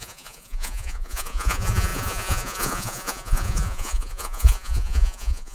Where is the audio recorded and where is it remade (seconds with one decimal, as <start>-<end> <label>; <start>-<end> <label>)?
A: 0.0-5.5 remade